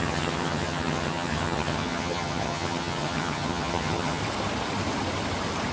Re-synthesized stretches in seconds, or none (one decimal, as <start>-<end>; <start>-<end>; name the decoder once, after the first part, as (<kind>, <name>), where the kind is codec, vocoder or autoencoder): 0.0-4.2 (vocoder, HiFi-GAN)